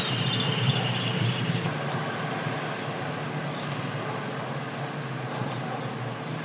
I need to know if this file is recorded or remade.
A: recorded